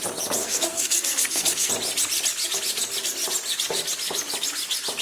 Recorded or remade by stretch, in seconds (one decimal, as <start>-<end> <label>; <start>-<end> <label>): 0.0-0.4 recorded; 0.4-1.7 remade; 1.7-5.0 recorded